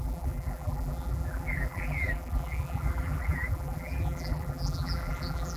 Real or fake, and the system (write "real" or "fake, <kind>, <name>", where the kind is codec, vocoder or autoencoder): fake, vocoder, BigVGAN v2